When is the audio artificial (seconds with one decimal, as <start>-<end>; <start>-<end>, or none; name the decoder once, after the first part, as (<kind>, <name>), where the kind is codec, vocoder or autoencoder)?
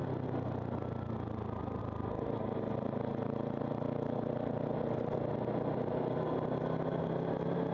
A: none